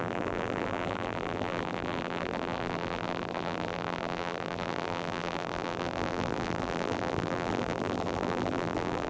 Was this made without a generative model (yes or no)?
no